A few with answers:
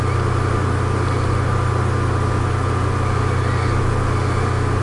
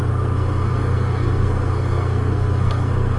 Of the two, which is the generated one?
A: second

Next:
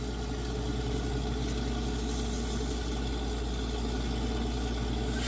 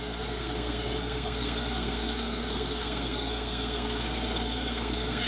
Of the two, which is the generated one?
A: second